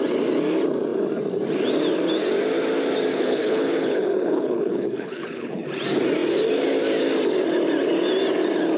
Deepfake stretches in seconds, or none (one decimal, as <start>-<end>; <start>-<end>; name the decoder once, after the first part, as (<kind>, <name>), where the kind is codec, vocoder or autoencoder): 3.1-5.6 (codec, HILCodec)